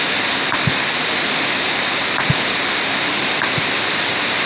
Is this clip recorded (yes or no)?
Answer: yes